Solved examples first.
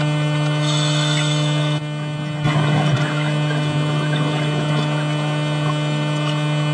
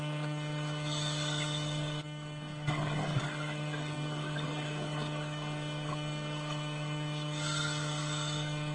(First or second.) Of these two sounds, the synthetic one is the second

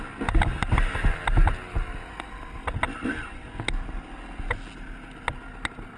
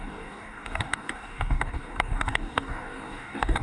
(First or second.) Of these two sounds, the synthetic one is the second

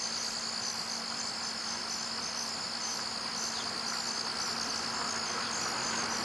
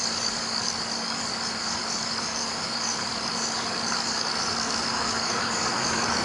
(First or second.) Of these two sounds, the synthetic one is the second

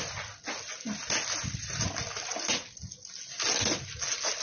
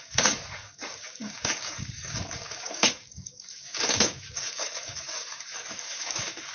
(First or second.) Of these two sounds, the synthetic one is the second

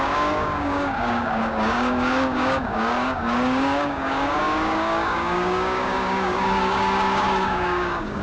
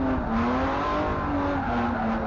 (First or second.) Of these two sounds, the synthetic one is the first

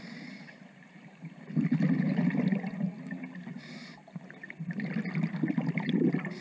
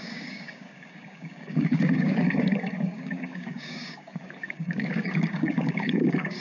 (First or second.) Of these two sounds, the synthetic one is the second